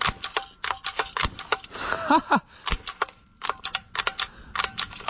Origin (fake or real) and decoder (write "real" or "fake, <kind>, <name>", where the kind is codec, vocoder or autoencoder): real